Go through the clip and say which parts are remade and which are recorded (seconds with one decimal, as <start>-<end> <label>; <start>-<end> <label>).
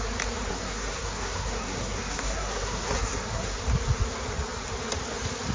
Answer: 0.0-0.5 recorded; 0.5-3.6 remade; 3.6-5.5 recorded